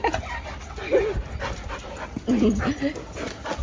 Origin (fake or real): real